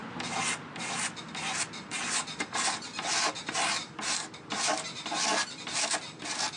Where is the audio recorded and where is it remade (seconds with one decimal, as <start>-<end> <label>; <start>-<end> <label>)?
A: 0.0-6.6 recorded